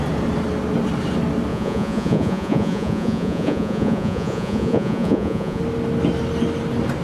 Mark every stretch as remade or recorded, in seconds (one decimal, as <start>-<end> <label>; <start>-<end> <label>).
0.0-1.5 recorded; 1.5-5.6 remade; 5.6-7.0 recorded